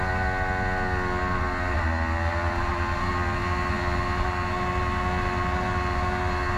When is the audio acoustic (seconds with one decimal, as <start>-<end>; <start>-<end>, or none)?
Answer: 0.0-6.6